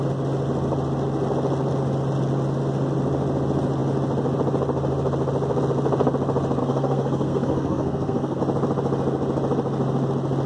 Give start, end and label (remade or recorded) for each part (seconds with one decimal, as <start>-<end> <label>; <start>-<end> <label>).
0.0-6.6 recorded; 6.6-8.4 remade; 8.4-10.5 recorded